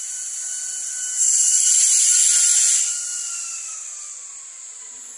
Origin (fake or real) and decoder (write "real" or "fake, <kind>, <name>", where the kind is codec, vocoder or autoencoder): real